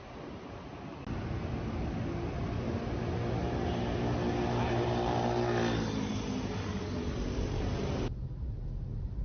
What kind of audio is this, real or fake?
real